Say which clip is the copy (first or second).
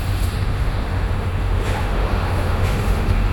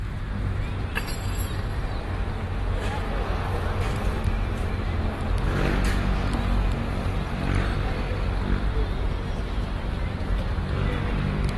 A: first